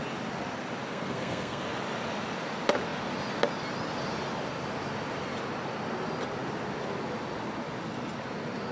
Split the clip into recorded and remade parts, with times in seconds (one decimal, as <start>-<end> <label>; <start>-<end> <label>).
0.0-0.9 recorded; 0.9-1.6 remade; 1.6-8.7 recorded